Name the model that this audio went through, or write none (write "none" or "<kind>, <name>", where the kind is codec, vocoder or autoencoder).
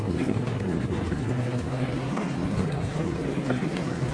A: codec, SNAC